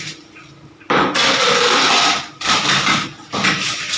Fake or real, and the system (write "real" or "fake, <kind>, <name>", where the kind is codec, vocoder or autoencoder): real